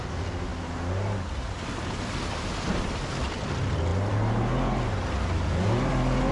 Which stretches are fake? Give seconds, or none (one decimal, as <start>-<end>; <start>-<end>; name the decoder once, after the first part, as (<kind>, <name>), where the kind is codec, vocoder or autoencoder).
none